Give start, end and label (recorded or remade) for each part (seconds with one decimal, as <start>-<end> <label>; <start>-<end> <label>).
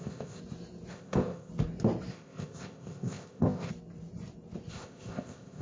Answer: 0.0-0.4 remade; 0.4-0.9 recorded; 0.9-1.5 remade; 1.5-2.1 recorded; 2.1-3.7 remade; 3.7-4.7 recorded; 4.7-5.6 remade